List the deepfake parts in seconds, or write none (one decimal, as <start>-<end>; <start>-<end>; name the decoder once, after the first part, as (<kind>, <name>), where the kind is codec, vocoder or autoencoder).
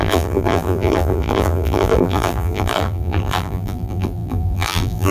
0.0-5.1 (vocoder, BigVGAN v2)